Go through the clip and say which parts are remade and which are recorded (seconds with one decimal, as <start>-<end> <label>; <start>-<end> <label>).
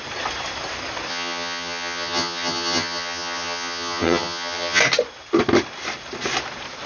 0.0-1.1 recorded; 1.1-4.8 remade; 4.8-6.9 recorded